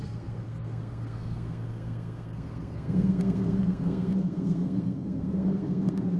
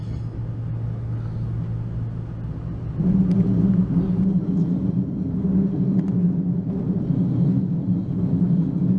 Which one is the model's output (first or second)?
first